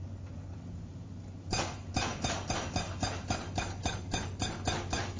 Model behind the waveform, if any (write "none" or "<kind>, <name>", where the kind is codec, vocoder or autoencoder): none